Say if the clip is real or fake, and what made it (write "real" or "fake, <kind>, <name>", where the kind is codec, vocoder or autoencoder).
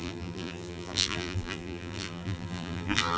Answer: fake, vocoder, BigVGAN v2